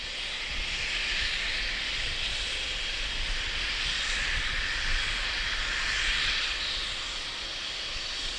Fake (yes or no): yes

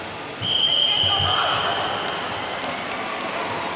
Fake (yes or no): no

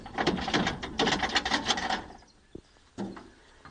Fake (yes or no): no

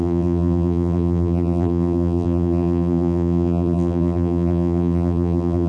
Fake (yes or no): yes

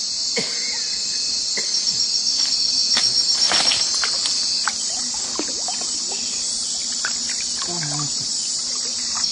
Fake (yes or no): no